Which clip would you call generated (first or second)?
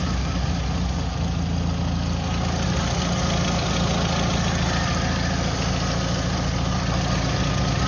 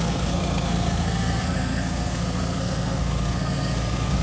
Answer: second